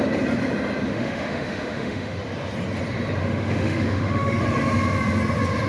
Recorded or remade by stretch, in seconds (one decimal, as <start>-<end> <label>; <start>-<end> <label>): 0.0-0.9 recorded; 0.9-2.2 remade; 2.2-3.2 recorded; 3.2-4.4 remade; 4.4-5.7 recorded